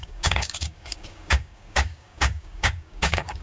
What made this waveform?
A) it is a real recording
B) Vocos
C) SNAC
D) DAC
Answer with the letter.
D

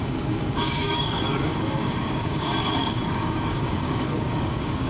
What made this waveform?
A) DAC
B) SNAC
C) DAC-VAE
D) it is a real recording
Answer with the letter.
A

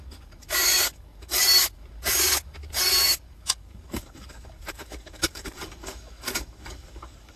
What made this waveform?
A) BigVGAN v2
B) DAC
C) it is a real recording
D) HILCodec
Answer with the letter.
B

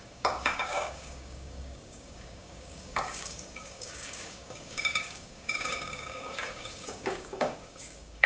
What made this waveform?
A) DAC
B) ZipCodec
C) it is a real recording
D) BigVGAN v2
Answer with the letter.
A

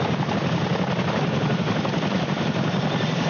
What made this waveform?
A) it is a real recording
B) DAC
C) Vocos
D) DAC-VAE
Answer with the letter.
A